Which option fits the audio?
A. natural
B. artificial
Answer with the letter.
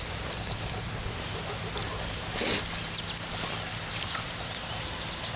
A